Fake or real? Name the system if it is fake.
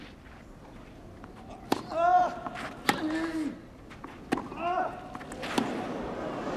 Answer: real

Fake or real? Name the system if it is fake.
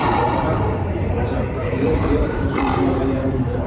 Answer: fake, vocoder, BigVGAN v2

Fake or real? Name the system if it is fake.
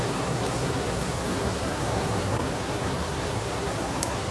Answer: fake, codec, SNAC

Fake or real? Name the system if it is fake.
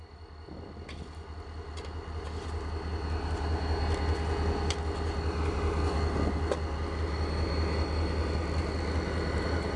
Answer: real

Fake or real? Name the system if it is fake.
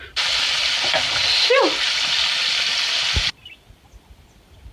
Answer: real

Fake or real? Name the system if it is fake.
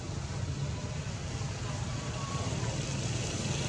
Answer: real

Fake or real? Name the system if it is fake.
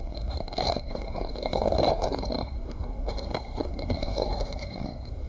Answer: fake, codec, SNAC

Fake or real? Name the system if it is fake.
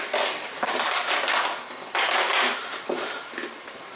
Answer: real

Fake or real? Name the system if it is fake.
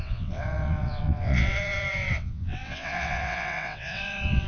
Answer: fake, vocoder, WaveNeXt